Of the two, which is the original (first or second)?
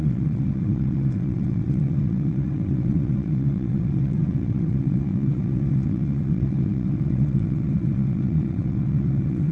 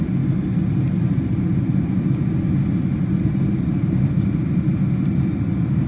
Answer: second